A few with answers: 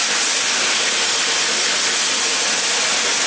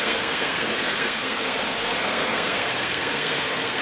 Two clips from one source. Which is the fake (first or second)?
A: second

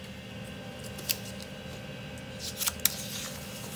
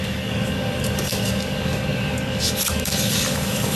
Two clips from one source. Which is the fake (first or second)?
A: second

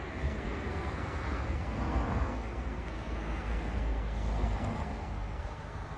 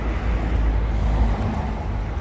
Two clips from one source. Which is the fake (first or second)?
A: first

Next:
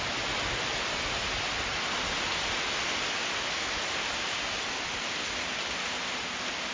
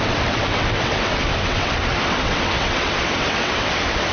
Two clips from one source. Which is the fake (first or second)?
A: second